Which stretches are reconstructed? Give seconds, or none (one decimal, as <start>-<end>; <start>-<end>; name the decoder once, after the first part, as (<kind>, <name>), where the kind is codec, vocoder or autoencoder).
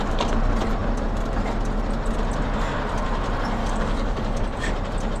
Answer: 3.6-4.7 (codec, DAC)